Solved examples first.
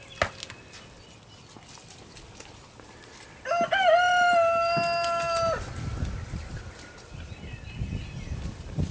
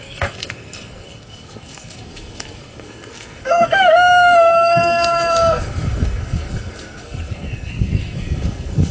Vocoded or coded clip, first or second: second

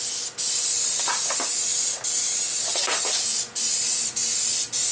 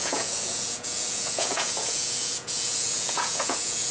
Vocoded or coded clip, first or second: second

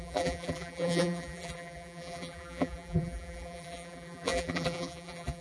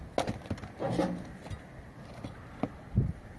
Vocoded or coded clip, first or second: first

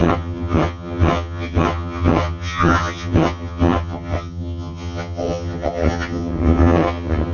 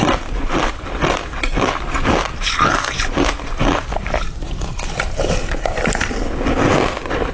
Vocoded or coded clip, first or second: first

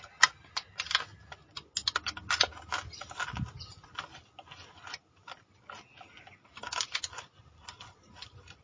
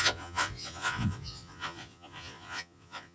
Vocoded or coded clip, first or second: second